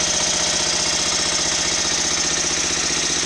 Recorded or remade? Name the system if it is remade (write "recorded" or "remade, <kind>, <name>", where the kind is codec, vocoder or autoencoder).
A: recorded